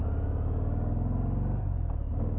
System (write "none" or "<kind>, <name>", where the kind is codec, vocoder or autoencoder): none